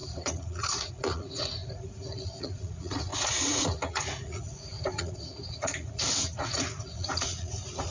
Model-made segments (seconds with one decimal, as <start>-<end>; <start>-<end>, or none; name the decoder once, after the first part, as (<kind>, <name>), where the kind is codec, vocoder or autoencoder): 0.0-1.6 (vocoder, Vocos); 2.4-7.9